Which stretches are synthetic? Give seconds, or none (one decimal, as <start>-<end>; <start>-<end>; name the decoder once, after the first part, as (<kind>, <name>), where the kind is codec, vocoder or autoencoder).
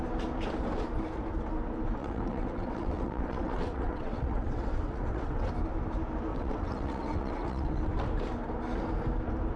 2.0-5.5 (vocoder, WaveNeXt); 6.3-7.9